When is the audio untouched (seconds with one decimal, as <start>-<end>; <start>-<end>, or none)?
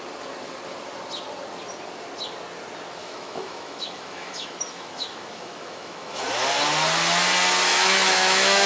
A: 0.0-3.0; 6.2-7.7